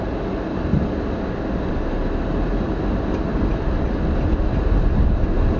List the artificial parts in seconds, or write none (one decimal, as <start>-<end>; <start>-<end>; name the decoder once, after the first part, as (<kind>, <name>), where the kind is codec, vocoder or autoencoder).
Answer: 0.7-1.7 (vocoder, BigVGAN v2); 3.3-4.3